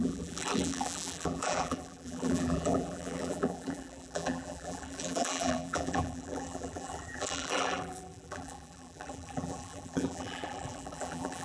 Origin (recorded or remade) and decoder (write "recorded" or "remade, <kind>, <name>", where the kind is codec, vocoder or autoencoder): remade, vocoder, BigVGAN v2